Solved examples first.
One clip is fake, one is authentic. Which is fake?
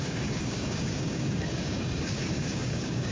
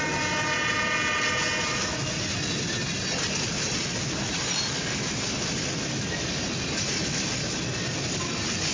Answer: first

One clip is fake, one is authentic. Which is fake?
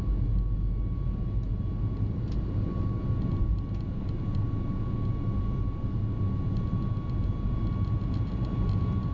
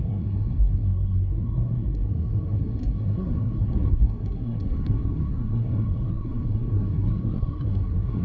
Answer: second